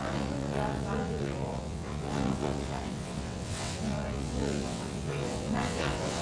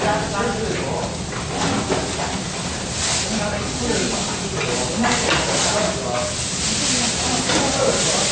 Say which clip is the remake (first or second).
first